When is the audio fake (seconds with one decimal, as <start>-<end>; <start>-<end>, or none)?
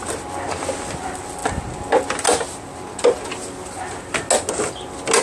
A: none